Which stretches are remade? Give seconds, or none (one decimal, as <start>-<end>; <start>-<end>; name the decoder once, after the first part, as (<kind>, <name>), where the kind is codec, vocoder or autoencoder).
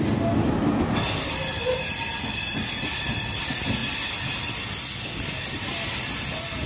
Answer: none